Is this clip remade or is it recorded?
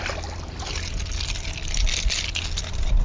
recorded